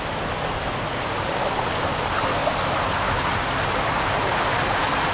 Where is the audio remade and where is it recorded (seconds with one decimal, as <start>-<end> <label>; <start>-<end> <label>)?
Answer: 0.0-5.1 recorded